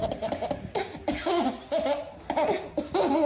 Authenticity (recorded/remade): recorded